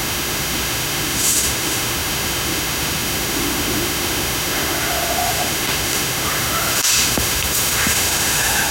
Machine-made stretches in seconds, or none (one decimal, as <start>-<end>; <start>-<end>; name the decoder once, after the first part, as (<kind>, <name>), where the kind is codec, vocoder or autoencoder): 0.0-8.7 (autoencoder, DAC-VAE)